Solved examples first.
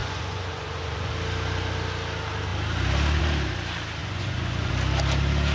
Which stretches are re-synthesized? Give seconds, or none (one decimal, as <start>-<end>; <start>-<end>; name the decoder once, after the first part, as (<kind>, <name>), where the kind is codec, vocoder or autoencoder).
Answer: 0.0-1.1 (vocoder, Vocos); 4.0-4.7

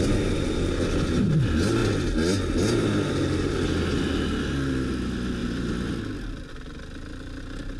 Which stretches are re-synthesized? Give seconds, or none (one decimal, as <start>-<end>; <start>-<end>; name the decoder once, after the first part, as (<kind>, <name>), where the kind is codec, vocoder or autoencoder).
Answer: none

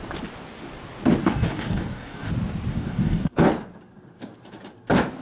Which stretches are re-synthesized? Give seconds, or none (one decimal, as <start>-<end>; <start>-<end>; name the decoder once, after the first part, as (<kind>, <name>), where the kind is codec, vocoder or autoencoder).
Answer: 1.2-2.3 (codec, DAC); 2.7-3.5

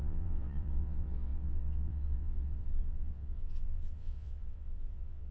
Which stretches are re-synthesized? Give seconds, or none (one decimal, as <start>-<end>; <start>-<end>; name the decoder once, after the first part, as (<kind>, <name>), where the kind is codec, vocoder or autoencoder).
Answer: 0.0-5.3 (vocoder, WaveNeXt)

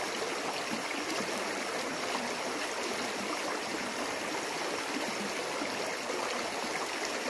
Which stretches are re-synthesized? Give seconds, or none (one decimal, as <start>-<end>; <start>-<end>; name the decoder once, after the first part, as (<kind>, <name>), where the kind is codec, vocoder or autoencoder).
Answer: none

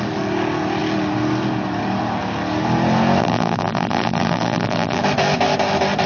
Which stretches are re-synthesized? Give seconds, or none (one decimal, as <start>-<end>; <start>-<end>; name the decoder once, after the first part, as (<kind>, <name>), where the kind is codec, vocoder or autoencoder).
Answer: 3.2-5.0 (vocoder, BigVGAN v2)

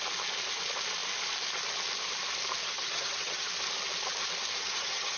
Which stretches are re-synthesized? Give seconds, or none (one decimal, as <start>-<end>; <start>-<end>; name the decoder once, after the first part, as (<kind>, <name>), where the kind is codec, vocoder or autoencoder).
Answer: 2.6-3.5 (vocoder, HiFi-GAN); 4.6-5.2